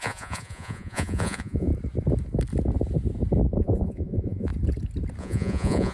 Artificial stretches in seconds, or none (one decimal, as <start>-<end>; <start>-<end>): 0.0-1.7; 3.6-4.5; 5.2-5.9